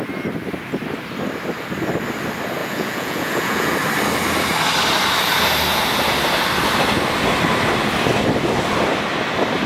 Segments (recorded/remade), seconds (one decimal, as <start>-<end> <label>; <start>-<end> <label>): 0.0-2.6 recorded; 2.6-3.7 remade; 3.7-9.7 recorded